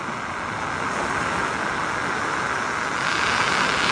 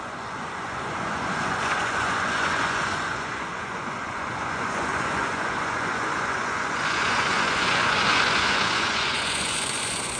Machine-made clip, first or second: second